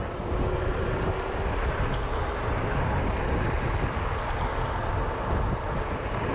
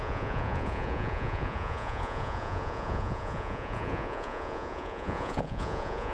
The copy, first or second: second